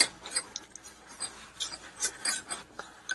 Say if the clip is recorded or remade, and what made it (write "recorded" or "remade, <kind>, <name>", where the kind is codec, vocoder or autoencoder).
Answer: recorded